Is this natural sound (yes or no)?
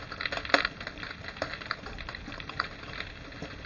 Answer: no